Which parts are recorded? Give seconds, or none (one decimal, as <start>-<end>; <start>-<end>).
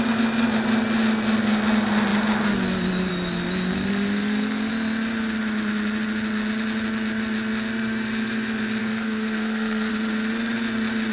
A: 0.0-3.7; 4.7-8.8; 9.9-11.1